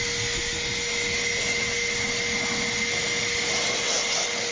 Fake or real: real